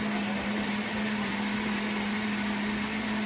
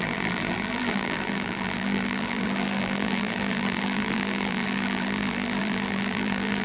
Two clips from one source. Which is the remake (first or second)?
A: second